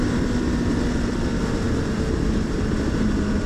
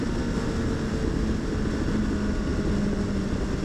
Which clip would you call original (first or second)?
second